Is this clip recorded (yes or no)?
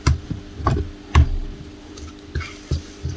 yes